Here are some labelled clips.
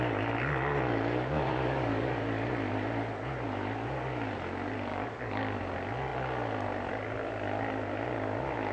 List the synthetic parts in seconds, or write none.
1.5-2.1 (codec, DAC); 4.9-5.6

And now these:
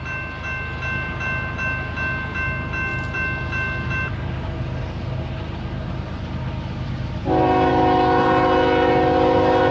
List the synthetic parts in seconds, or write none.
none

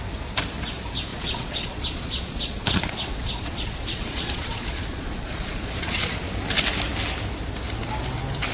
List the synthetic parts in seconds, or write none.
1.1-6.2 (vocoder, Vocos)

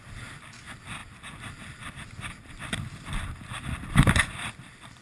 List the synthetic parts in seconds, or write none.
none

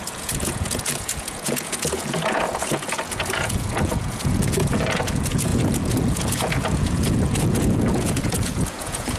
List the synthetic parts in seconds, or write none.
0.0-9.2 (vocoder, Vocos)

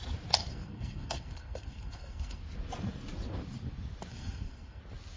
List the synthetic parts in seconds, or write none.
0.4-2.4 (codec, SNAC); 4.1-4.8